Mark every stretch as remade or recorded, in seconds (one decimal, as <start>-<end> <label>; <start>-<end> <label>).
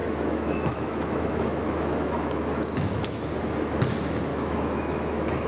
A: 0.0-3.3 remade; 3.3-4.3 recorded; 4.3-5.5 remade